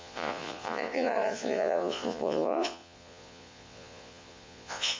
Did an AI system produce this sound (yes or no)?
yes